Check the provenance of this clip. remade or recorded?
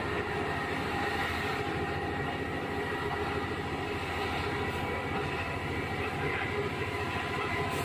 recorded